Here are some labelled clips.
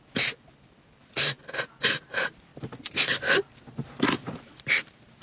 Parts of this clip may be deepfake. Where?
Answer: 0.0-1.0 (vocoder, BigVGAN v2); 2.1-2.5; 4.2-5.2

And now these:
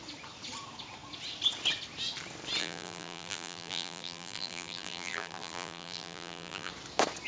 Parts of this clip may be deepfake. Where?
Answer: 2.6-6.7 (vocoder, BigVGAN v2)

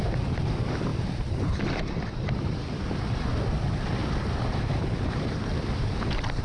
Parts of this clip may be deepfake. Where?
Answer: 4.0-5.9 (vocoder, BigVGAN v2)

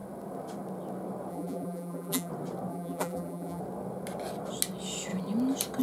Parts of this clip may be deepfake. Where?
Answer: 1.3-2.3 (vocoder, BigVGAN v2); 2.7-3.6

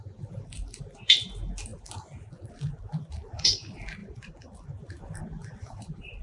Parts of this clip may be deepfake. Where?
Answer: 0.0-1.7 (vocoder, BigVGAN v2); 2.5-6.2

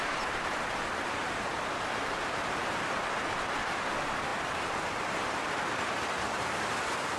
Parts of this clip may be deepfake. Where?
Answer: 0.0-7.2 (vocoder, BigVGAN v2)

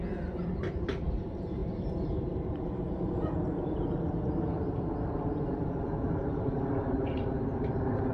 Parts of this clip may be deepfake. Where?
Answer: 0.0-8.1 (vocoder, BigVGAN v2)